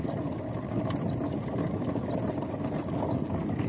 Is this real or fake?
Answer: real